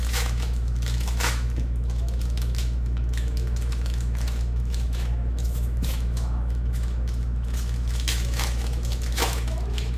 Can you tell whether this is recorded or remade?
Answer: remade